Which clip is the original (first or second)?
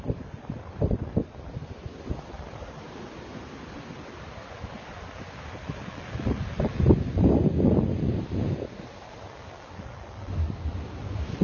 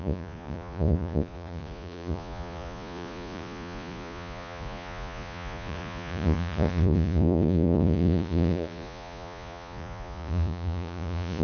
first